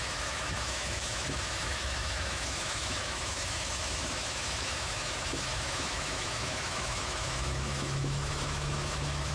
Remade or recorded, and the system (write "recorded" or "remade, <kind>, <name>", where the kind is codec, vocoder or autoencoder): remade, autoencoder, DAC-VAE